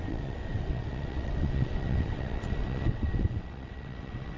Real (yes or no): no